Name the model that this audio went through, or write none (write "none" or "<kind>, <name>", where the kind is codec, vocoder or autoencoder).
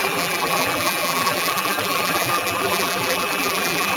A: vocoder, BigVGAN v2